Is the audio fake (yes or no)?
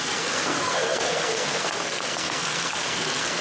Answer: yes